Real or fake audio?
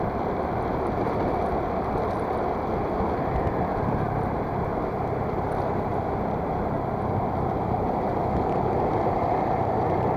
fake